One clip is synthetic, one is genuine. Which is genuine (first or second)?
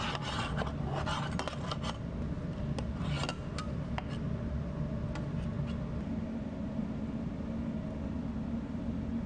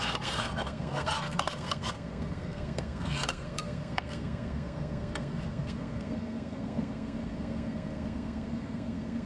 first